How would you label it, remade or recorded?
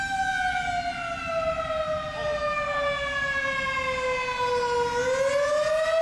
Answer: recorded